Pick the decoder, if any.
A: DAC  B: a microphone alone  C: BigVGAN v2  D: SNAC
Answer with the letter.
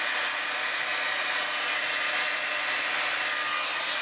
B